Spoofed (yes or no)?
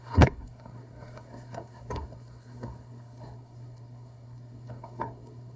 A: yes